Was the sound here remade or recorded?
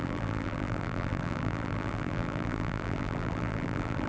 remade